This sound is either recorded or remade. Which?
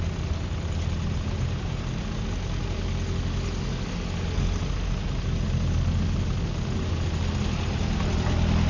recorded